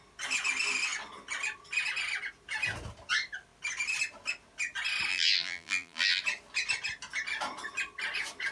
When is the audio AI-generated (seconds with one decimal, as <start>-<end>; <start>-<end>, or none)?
5.1-6.2